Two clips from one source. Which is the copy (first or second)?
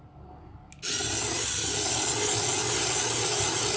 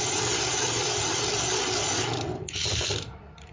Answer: second